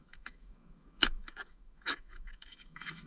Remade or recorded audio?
remade